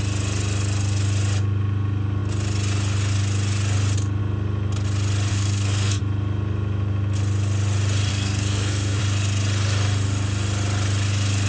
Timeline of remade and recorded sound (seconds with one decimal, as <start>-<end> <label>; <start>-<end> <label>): 0.0-5.3 recorded; 5.3-6.0 remade; 6.0-8.1 recorded; 8.1-9.0 remade; 9.0-11.5 recorded